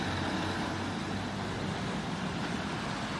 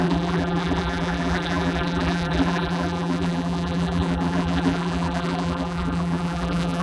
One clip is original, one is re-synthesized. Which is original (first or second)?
first